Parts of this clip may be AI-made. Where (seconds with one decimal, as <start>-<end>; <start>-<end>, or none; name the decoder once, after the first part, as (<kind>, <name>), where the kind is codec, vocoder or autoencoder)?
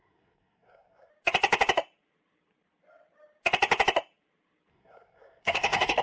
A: 0.0-1.1 (codec, SNAC); 4.7-6.0